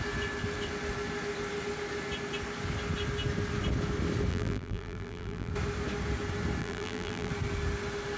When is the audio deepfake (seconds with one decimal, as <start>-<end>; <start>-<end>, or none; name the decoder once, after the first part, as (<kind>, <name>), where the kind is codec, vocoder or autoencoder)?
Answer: 4.3-5.5 (vocoder, BigVGAN v2); 6.6-7.3